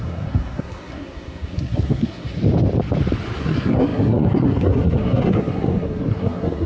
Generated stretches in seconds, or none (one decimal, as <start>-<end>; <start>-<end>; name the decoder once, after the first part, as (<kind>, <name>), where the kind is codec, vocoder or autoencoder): 0.0-2.4 (codec, SNAC); 3.4-6.7